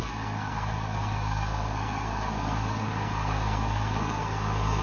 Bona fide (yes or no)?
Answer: no